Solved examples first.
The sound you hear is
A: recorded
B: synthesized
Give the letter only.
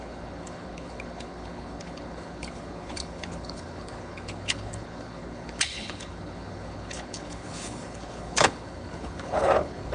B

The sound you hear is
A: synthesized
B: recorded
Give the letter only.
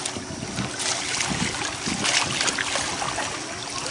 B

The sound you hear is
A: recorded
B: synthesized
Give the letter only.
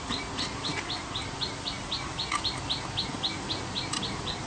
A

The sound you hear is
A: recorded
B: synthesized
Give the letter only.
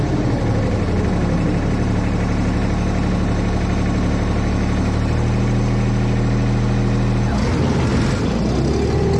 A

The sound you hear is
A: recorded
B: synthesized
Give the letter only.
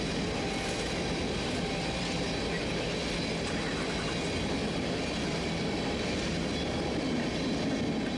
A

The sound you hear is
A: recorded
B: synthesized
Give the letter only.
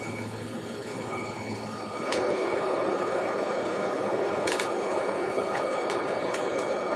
B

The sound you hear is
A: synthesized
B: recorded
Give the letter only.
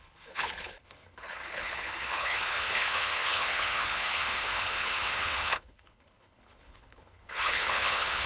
A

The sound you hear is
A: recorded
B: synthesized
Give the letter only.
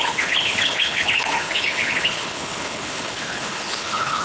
B